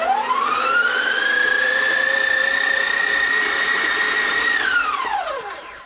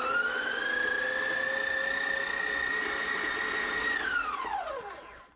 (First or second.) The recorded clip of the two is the second